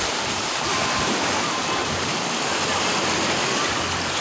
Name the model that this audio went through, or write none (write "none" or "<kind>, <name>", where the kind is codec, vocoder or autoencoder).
none